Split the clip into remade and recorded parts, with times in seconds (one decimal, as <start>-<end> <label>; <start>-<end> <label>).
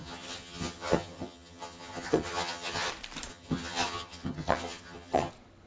0.0-2.9 remade; 2.9-3.3 recorded; 3.3-5.3 remade; 5.3-5.7 recorded